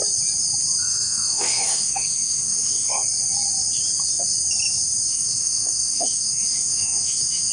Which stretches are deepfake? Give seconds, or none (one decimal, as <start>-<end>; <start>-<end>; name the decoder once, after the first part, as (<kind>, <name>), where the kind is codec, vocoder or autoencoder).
0.8-2.9 (autoencoder, DAC-VAE); 5.1-7.5